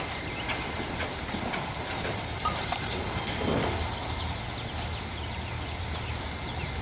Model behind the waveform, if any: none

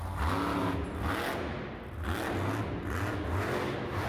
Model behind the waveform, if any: none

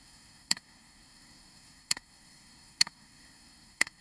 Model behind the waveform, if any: codec, SNAC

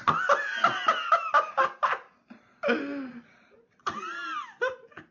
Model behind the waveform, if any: none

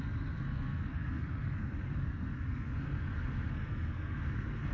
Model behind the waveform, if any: codec, SNAC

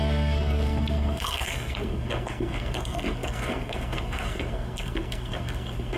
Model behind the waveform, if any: codec, SNAC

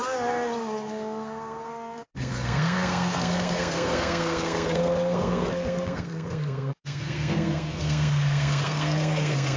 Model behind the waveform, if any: codec, SNAC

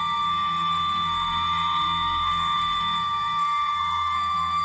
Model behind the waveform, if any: codec, SNAC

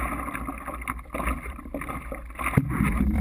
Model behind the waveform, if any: none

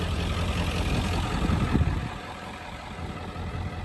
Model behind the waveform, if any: none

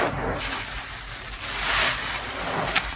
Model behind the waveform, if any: none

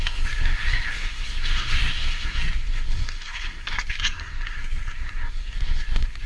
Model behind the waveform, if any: codec, SNAC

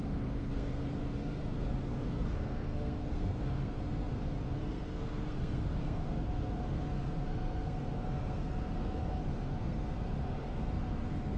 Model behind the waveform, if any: codec, SNAC